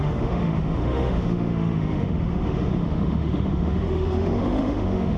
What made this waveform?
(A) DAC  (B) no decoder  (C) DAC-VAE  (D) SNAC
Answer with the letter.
C